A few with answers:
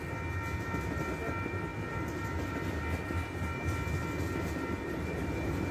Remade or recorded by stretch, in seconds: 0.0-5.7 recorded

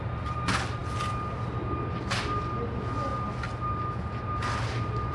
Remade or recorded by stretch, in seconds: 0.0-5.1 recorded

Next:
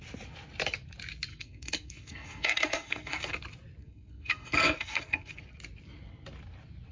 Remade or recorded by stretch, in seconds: 0.0-1.3 recorded; 1.3-3.3 remade; 3.3-3.8 recorded; 3.8-5.4 remade; 5.4-6.9 recorded

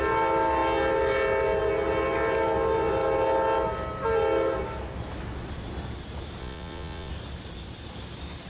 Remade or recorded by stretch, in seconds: 0.0-6.4 recorded; 6.4-7.1 remade; 7.1-8.5 recorded